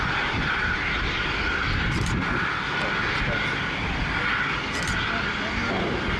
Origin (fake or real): real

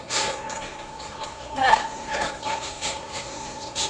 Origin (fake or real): fake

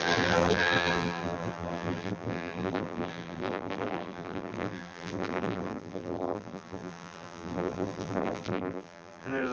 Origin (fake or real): fake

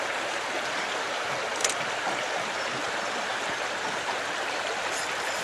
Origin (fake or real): fake